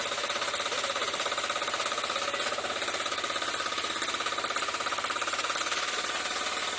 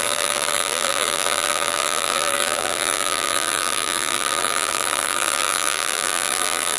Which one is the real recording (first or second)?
first